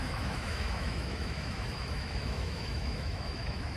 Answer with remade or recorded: remade